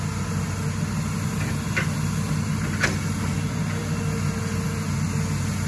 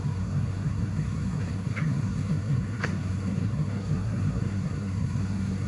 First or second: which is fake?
second